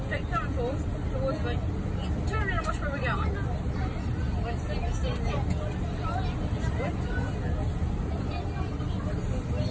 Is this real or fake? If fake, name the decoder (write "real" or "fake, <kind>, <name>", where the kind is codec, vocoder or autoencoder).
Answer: real